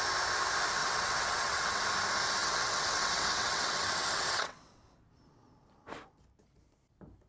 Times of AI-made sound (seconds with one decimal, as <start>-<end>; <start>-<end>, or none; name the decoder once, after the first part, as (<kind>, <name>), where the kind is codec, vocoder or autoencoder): 0.8-1.8 (vocoder, WaveNeXt); 2.4-4.9